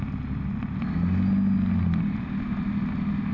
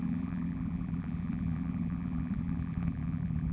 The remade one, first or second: second